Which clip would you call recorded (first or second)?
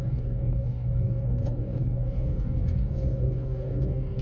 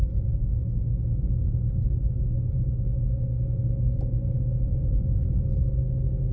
second